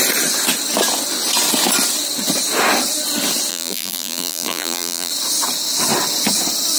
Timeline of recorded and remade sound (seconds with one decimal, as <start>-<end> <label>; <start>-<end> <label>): 0.0-3.5 recorded; 3.5-5.1 remade; 5.1-6.8 recorded